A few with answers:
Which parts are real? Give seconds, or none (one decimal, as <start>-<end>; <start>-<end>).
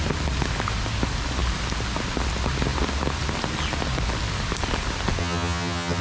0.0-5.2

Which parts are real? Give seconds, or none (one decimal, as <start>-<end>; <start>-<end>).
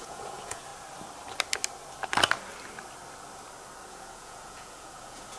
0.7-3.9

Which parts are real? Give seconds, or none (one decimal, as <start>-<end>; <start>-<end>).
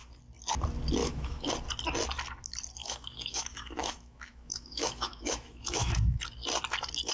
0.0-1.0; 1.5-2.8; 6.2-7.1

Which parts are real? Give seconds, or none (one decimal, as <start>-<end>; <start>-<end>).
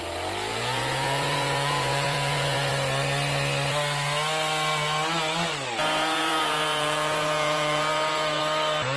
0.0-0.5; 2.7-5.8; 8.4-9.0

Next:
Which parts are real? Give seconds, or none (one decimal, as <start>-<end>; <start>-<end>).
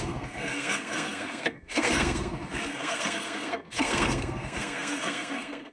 none